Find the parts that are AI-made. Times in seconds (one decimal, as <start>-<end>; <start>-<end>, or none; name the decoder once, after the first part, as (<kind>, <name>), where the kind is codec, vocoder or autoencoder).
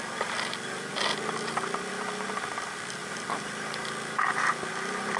0.0-0.9 (vocoder, BigVGAN v2); 1.9-3.0; 4.7-5.2